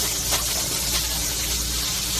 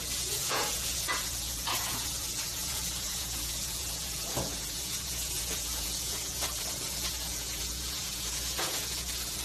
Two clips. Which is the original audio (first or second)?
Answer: first